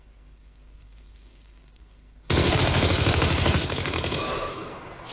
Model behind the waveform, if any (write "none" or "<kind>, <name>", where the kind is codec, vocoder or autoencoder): codec, SNAC